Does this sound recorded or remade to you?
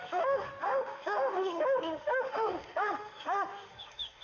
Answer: remade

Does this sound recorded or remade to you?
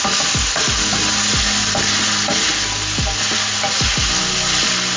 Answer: recorded